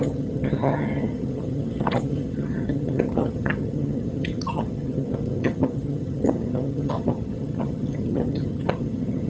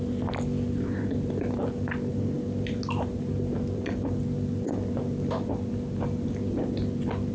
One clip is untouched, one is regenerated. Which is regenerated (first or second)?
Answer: first